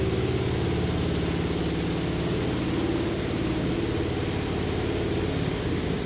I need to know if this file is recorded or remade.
recorded